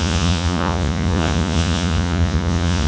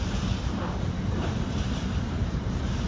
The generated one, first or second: first